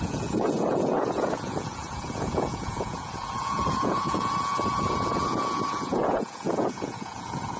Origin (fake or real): fake